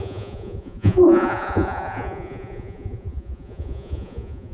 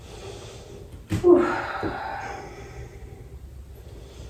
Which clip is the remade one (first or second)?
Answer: first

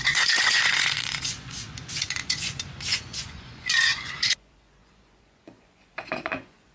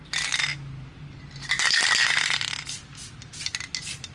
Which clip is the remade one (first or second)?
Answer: first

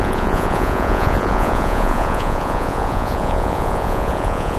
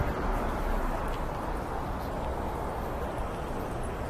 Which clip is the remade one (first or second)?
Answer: first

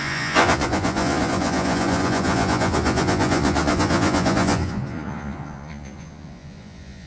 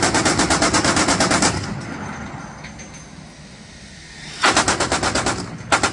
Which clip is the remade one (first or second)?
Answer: first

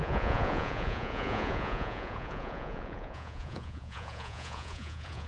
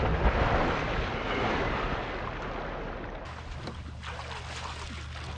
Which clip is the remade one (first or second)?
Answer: first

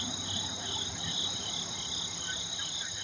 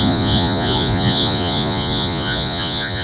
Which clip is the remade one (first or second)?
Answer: second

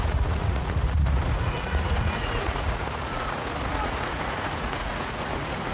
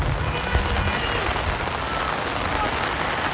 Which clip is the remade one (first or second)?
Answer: first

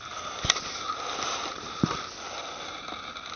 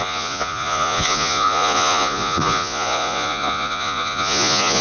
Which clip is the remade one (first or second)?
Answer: second